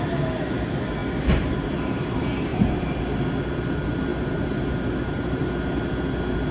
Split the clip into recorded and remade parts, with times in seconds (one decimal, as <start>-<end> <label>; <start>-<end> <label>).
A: 0.0-4.1 recorded; 4.1-5.6 remade; 5.6-6.5 recorded